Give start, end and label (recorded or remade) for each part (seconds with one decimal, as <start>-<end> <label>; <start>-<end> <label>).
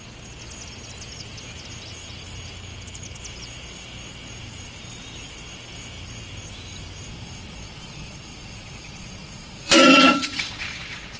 0.0-7.1 recorded; 7.1-11.2 remade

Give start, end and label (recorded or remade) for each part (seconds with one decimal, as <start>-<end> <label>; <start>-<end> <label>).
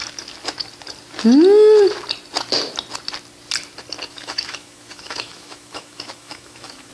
0.0-4.1 recorded; 4.1-6.9 remade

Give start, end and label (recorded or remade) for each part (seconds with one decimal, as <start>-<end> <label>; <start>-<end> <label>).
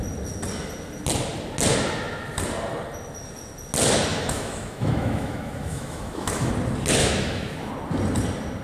0.0-4.1 recorded; 4.1-6.5 remade; 6.5-7.0 recorded; 7.0-7.7 remade; 7.7-8.6 recorded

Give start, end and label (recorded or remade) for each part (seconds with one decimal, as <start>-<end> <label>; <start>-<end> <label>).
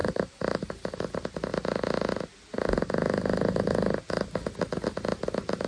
0.0-0.7 remade; 0.7-5.7 recorded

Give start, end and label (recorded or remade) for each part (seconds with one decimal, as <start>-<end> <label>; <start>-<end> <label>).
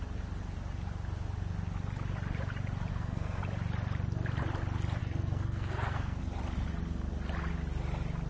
0.0-2.9 recorded; 2.9-3.4 remade; 3.4-5.0 recorded; 5.0-6.2 remade; 6.2-8.3 recorded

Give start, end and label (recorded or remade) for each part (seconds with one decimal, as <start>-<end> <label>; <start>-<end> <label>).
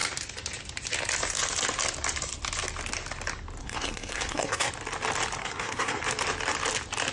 0.0-3.6 recorded; 3.6-4.7 remade; 4.7-5.4 recorded; 5.4-6.0 remade; 6.0-7.1 recorded